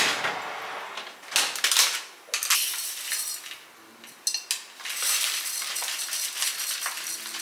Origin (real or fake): real